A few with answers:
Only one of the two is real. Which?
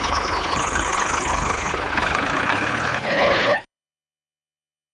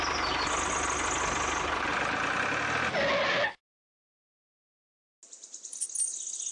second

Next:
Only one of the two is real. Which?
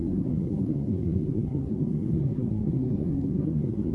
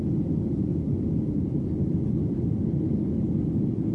second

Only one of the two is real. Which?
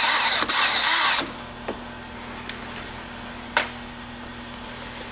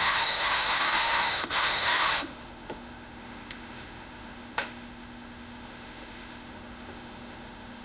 first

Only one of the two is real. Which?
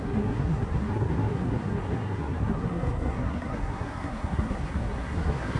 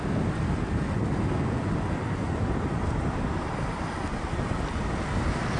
second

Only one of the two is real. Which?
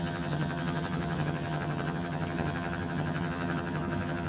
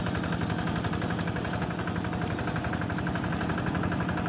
second